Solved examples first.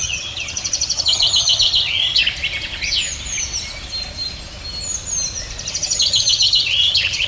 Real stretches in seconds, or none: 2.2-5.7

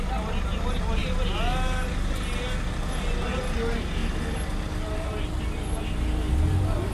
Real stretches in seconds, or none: 0.0-6.9

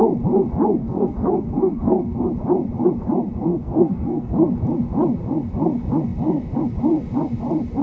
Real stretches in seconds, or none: 0.0-0.8; 2.3-3.5; 4.5-7.8

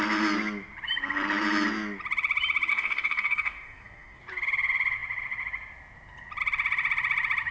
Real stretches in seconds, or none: 0.0-2.7; 4.2-7.5